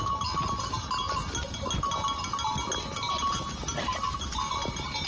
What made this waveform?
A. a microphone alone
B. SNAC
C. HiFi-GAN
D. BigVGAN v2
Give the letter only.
A